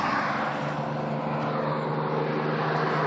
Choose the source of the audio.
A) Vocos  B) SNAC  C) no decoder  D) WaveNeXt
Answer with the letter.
C